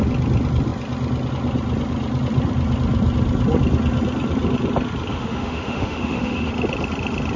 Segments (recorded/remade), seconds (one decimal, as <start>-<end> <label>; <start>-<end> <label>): 0.0-5.1 recorded; 5.1-6.5 remade; 6.5-7.4 recorded